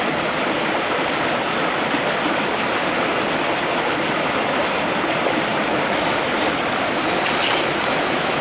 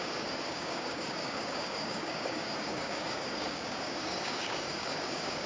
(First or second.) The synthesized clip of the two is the second